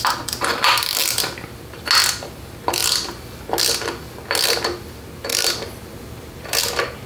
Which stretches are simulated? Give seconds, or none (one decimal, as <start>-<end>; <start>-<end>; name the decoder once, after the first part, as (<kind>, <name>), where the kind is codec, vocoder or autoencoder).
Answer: none